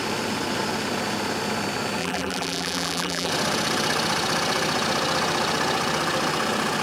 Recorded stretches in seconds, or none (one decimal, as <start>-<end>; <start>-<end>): 0.0-2.0; 3.3-6.8

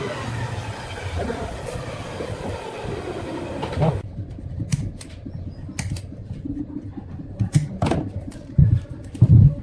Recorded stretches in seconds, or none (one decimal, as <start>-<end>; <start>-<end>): 0.0-9.6

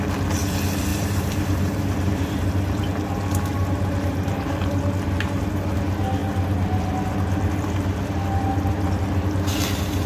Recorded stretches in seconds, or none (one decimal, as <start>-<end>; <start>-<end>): 0.0-0.9; 2.8-3.6; 4.7-10.1

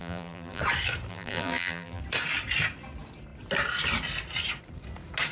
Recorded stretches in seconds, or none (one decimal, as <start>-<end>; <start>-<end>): 0.6-1.1; 2.0-5.3